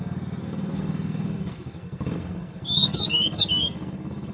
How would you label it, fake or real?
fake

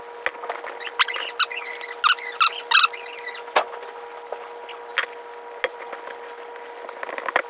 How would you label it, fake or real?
real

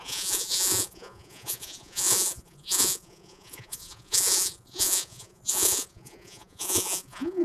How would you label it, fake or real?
fake